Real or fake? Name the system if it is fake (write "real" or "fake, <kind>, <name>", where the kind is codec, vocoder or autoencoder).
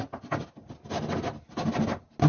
real